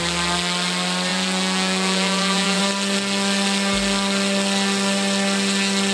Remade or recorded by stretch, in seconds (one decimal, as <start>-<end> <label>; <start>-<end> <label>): 0.0-1.1 recorded; 1.1-2.6 remade; 2.6-5.9 recorded

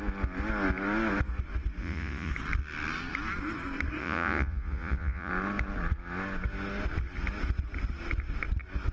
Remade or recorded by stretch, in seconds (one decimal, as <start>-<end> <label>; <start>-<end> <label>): 0.0-1.8 recorded; 1.8-2.3 remade; 2.3-4.0 recorded; 4.0-5.3 remade; 5.3-8.9 recorded

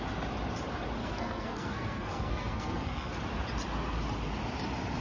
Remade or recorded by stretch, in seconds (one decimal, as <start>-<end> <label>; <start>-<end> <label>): 0.0-1.0 recorded; 1.0-3.1 remade; 3.1-5.0 recorded

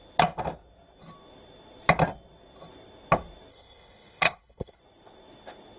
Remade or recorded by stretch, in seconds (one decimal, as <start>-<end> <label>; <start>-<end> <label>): 0.0-3.5 recorded; 3.5-4.8 remade; 4.8-5.8 recorded

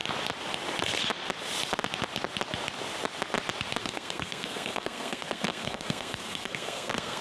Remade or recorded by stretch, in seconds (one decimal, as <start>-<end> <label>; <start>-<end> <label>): 0.0-3.8 recorded; 3.8-7.2 remade

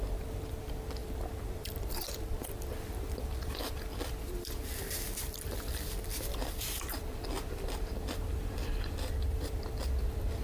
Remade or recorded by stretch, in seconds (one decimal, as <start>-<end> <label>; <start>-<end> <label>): 0.0-10.4 remade